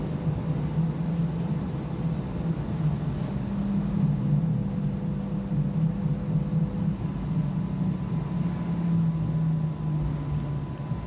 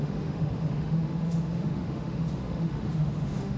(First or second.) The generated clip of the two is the second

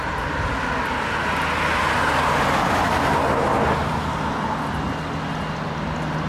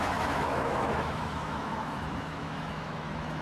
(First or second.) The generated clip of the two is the second